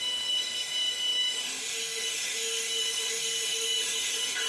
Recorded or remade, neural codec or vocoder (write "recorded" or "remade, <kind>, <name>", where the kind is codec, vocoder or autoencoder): remade, autoencoder, DAC-VAE